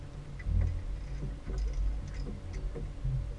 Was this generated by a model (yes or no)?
no